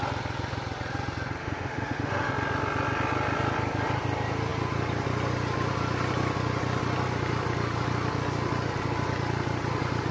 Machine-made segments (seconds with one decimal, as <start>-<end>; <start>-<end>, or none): 1.4-2.3